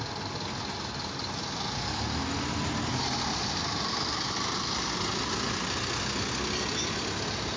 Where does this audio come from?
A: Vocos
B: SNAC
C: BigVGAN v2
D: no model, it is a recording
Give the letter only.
D